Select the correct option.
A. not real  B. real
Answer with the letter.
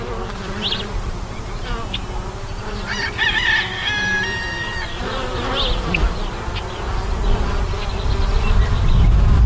B